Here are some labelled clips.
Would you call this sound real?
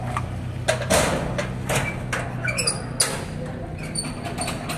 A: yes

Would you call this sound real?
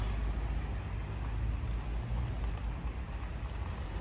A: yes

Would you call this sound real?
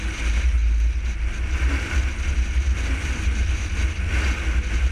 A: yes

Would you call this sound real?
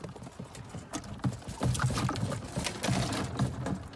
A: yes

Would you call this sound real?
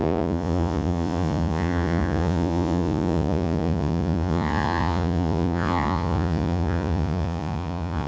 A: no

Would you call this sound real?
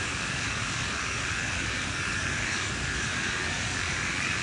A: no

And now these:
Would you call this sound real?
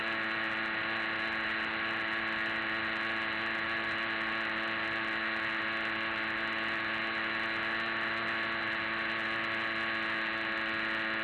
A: yes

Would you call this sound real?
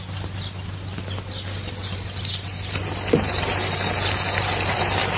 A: yes